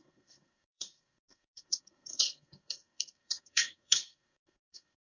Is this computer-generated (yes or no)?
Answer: yes